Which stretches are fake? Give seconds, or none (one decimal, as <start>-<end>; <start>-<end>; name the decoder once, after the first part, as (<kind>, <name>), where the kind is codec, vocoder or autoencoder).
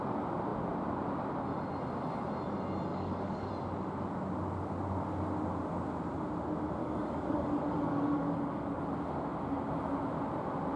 2.9-3.5 (codec, DAC); 6.8-8.8